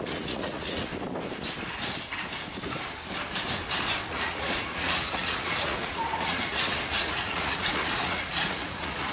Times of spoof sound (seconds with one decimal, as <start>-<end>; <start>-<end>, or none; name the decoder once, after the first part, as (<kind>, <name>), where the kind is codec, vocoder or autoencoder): 0.0-0.9 (vocoder, Vocos); 4.1-9.1